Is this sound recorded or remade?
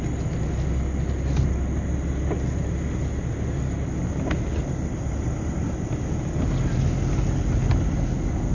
recorded